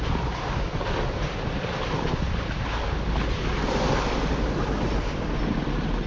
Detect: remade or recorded recorded